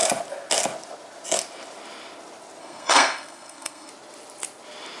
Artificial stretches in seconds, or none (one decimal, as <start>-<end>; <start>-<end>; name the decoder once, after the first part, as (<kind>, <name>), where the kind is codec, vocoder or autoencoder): 2.6-3.9 (codec, SNAC)